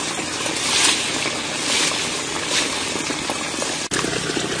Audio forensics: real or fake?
real